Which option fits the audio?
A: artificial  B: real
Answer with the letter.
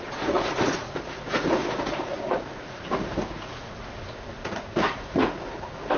A